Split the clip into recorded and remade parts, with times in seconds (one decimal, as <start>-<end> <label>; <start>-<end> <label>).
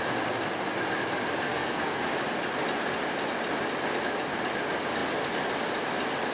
0.0-1.5 recorded; 1.5-2.0 remade; 2.0-6.3 recorded